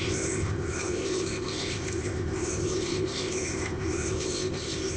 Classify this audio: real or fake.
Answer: fake